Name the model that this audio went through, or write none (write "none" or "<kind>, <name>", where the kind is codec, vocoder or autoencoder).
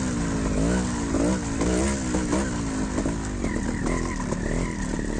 none